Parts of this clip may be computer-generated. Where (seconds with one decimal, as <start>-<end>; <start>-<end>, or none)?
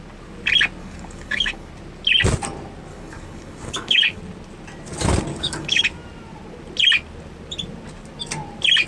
0.8-1.7; 2.9-4.2; 5.3-5.8